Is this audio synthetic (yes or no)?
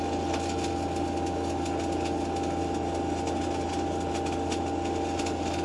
no